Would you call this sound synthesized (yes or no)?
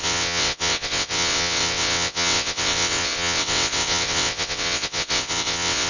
yes